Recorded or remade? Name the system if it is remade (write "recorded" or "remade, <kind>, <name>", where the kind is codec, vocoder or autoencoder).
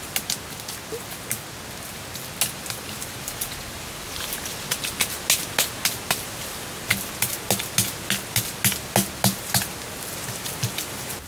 recorded